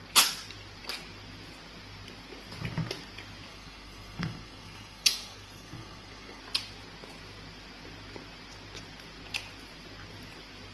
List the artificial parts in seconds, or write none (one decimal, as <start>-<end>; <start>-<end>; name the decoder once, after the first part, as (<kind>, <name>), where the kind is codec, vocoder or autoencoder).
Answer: 3.5-6.4 (codec, SNAC)